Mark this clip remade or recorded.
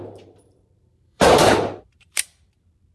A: remade